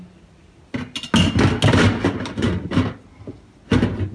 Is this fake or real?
real